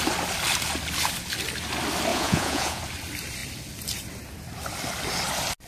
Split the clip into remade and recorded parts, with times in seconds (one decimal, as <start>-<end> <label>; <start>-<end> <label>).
0.0-2.1 recorded; 2.1-2.8 remade; 2.8-5.7 recorded

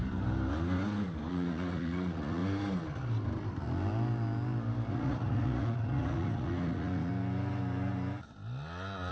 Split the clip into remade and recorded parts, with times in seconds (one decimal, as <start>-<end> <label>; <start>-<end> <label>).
0.0-1.3 recorded; 1.3-2.4 remade; 2.4-4.9 recorded; 4.9-7.1 remade; 7.1-9.1 recorded

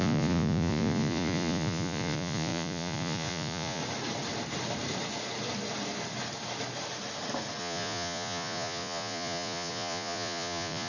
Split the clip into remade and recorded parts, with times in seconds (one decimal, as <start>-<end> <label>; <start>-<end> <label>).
0.0-3.8 remade; 3.8-7.6 recorded; 7.6-10.9 remade

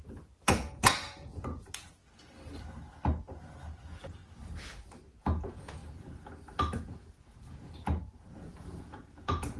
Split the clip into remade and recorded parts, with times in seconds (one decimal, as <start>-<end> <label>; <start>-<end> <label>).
0.0-2.0 remade; 2.0-3.8 recorded; 3.8-4.2 remade; 4.2-5.2 recorded; 5.2-5.8 remade; 5.8-6.8 recorded; 6.8-9.6 remade

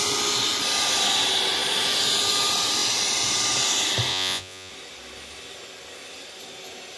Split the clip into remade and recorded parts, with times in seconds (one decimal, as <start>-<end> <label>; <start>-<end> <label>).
0.0-4.1 recorded; 4.1-4.7 remade; 4.7-7.0 recorded

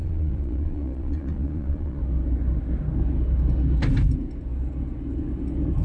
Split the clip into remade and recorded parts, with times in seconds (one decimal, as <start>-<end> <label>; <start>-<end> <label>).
0.0-2.0 remade; 2.0-5.8 recorded

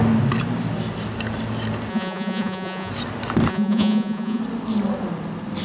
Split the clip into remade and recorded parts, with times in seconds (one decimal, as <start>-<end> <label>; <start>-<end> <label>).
0.0-1.9 recorded; 1.9-2.9 remade; 2.9-3.5 recorded; 3.5-4.4 remade; 4.4-5.6 recorded